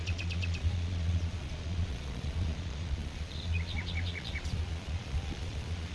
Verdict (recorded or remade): remade